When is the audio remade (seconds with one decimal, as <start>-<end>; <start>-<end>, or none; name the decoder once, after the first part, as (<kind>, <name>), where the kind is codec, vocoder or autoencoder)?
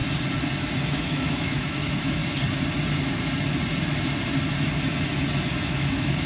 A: 0.9-2.2 (autoencoder, DAC-VAE); 5.5-6.3